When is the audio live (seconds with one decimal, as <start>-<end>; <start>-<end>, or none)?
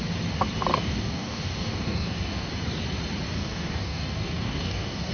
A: 0.0-0.7; 2.5-3.4